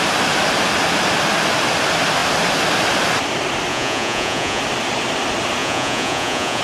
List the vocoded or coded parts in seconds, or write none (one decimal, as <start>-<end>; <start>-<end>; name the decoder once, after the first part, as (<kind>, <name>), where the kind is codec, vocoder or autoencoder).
3.7-4.6 (vocoder, Vocos); 5.6-6.6